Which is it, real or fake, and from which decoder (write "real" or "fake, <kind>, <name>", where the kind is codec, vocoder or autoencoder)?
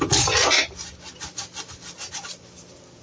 real